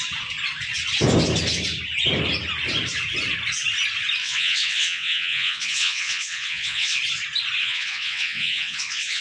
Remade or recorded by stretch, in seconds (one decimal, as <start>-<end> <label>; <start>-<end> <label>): 0.0-4.2 recorded; 4.2-7.0 remade; 7.0-7.6 recorded; 7.6-9.2 remade